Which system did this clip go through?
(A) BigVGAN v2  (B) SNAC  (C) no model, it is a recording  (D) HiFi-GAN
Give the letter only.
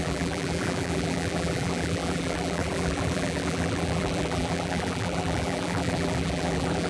A